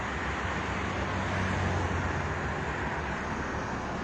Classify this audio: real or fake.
real